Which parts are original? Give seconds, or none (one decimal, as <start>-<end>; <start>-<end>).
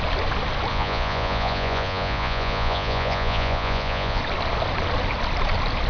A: 0.0-0.7; 4.2-5.9